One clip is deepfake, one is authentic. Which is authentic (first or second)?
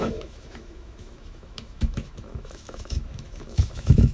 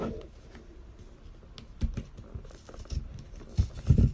second